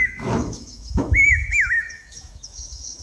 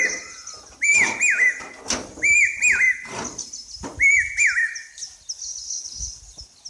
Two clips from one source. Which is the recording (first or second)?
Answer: second